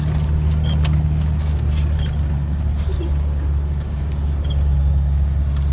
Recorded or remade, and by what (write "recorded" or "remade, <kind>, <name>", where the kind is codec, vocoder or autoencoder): recorded